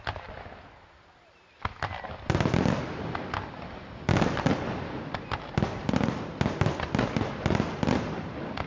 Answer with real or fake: real